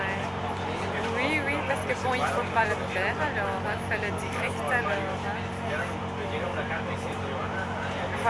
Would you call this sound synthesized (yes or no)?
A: no